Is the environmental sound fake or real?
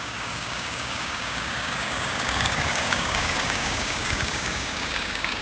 fake